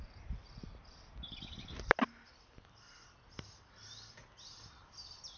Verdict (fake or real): real